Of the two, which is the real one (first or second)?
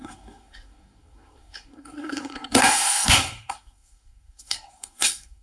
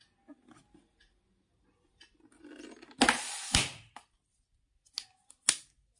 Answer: second